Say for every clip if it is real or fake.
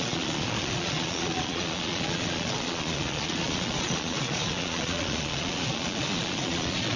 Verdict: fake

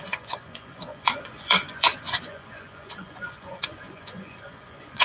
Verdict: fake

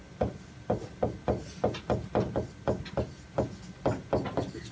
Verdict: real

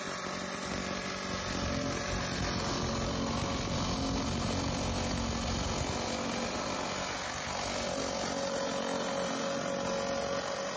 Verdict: real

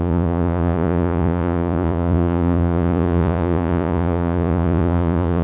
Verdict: fake